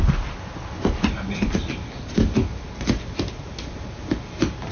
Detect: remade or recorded recorded